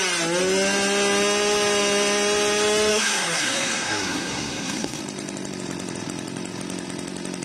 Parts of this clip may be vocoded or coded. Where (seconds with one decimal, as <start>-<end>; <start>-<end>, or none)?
2.9-5.0